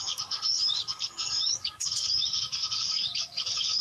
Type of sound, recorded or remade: remade